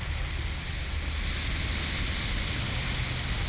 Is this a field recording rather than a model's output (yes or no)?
yes